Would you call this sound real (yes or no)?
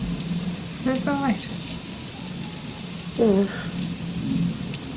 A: yes